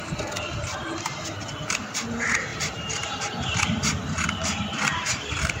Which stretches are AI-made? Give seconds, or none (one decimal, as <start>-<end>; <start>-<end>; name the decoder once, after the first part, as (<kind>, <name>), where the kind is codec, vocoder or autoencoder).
0.0-5.6 (vocoder, BigVGAN v2)

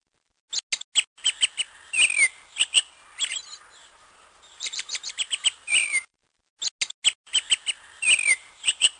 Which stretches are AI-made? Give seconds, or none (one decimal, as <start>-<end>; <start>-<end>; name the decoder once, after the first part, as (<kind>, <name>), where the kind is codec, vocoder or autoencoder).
3.2-6.2 (vocoder, BigVGAN v2); 8.3-9.0

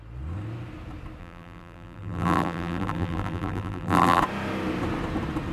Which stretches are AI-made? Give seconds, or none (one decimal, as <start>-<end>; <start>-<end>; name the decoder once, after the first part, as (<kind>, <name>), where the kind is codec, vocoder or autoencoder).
1.2-4.2 (vocoder, BigVGAN v2)